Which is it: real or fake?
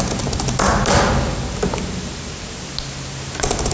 real